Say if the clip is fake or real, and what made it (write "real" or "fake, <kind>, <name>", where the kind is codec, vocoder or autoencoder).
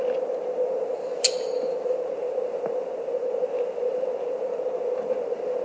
real